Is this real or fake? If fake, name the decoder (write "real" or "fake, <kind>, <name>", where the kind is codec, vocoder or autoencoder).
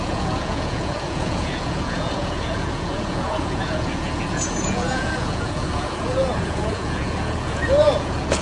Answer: fake, vocoder, Vocos